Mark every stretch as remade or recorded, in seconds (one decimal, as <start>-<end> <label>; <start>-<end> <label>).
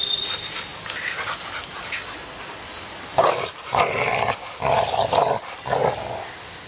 0.0-3.1 recorded; 3.1-4.1 remade; 4.1-6.7 recorded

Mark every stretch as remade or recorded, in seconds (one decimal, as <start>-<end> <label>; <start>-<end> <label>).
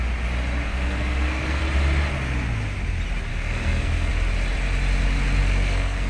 0.0-0.7 recorded; 0.7-1.6 remade; 1.6-3.3 recorded; 3.3-4.1 remade; 4.1-5.4 recorded; 5.4-6.1 remade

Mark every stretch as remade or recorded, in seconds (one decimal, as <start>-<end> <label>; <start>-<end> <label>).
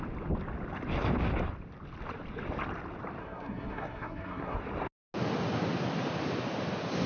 0.0-3.2 recorded; 3.2-4.6 remade; 4.6-7.1 recorded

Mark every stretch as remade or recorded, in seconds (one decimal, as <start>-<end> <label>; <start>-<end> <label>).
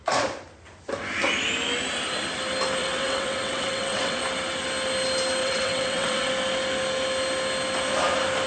0.0-2.8 recorded; 2.8-4.2 remade; 4.2-5.4 recorded; 5.4-6.3 remade; 6.3-8.5 recorded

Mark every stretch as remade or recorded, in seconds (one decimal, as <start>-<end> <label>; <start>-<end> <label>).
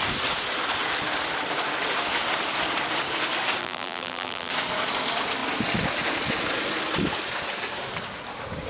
0.0-3.6 recorded; 3.6-4.5 remade; 4.5-8.7 recorded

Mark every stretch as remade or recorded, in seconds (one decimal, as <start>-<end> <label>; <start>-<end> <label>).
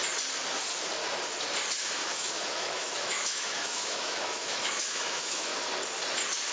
0.0-1.8 recorded; 1.8-5.7 remade; 5.7-6.5 recorded